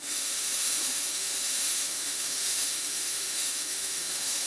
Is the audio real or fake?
fake